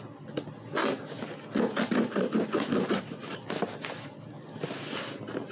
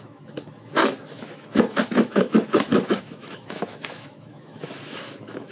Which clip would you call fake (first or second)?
second